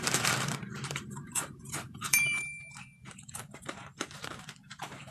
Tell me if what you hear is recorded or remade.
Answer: remade